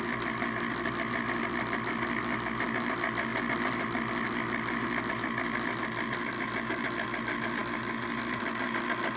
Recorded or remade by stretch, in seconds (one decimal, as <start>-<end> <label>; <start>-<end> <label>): 0.0-9.2 recorded